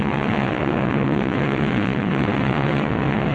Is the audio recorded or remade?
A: remade